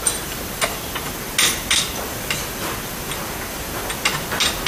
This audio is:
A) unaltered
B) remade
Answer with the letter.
A